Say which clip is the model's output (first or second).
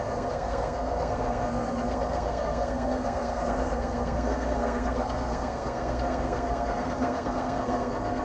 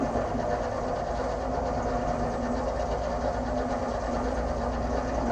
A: first